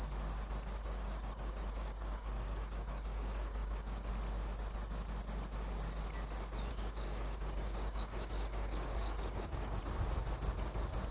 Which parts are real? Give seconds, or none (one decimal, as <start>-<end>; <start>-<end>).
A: 0.0-0.8; 4.1-6.7; 9.8-11.1